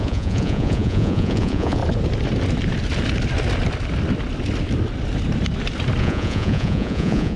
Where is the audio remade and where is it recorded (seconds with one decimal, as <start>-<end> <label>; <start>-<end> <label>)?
0.0-1.8 remade; 1.8-6.0 recorded; 6.0-7.4 remade

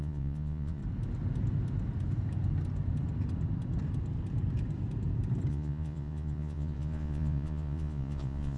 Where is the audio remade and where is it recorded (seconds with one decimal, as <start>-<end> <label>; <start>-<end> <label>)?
0.0-0.8 remade; 0.8-5.5 recorded; 5.5-8.6 remade